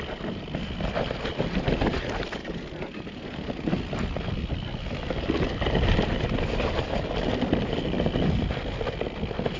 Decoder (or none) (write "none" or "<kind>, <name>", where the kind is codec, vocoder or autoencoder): none